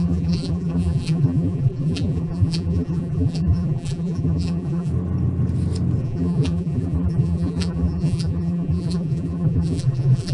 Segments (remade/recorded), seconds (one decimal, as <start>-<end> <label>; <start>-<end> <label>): 0.0-4.9 remade; 4.9-6.0 recorded; 6.0-10.3 remade